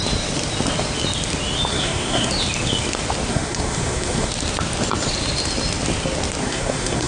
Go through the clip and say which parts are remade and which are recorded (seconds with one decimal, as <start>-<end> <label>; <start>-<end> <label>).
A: 0.0-1.7 recorded; 1.7-2.3 remade; 2.3-3.3 recorded; 3.3-4.3 remade; 4.3-6.4 recorded; 6.4-7.1 remade